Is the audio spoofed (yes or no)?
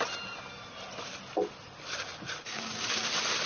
no